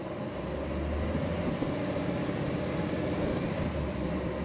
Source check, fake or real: real